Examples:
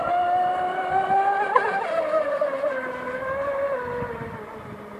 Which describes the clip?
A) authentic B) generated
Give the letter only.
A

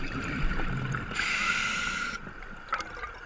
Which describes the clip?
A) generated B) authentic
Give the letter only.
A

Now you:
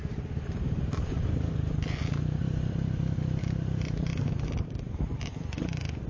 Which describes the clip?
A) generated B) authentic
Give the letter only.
A